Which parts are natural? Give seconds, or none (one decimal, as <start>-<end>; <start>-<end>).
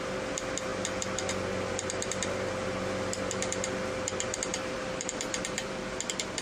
0.0-4.5; 5.8-6.4